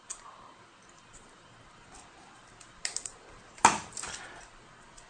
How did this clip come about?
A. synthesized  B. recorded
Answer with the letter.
B